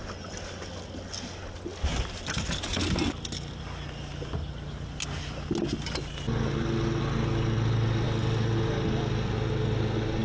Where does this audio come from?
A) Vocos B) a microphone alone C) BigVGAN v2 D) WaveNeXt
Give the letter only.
B